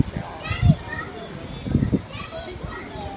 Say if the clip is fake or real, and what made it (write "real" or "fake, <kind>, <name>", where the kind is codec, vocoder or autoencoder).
real